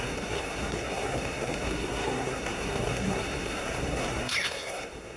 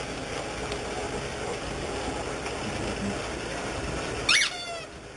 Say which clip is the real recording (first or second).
second